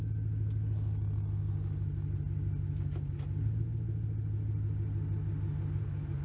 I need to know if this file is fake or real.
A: real